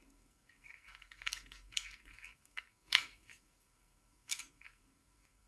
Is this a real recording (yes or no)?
no